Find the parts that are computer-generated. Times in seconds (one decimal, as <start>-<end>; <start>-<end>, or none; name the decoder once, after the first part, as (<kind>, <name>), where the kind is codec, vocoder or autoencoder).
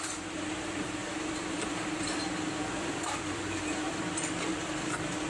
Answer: 1.0-3.9 (vocoder, BigVGAN v2)